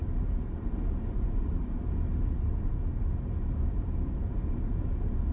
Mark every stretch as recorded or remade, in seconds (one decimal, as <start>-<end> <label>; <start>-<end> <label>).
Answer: 0.0-1.8 remade; 1.8-5.3 recorded